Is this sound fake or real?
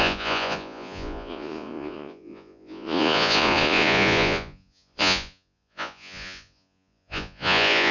fake